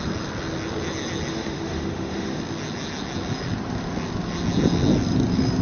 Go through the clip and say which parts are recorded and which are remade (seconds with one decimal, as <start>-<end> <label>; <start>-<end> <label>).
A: 0.0-1.3 recorded; 1.3-2.4 remade; 2.4-5.6 recorded